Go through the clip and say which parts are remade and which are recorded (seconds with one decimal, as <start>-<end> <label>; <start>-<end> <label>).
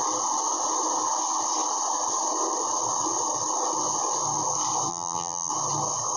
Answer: 0.0-4.9 recorded; 4.9-5.5 remade; 5.5-6.2 recorded